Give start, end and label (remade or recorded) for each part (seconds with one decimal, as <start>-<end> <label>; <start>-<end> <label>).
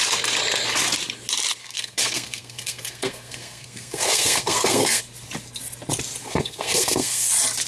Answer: 0.0-1.6 recorded; 1.6-5.0 remade; 5.0-6.2 recorded; 6.2-7.3 remade; 7.3-7.7 recorded